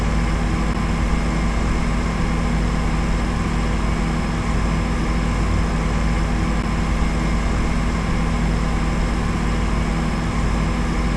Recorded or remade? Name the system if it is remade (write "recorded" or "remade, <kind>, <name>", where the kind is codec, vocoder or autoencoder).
recorded